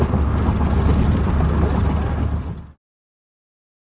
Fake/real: real